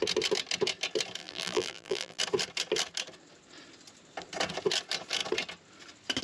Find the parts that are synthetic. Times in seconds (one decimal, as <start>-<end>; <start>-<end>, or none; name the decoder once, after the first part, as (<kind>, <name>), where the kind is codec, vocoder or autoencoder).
1.2-2.2 (vocoder, BigVGAN v2)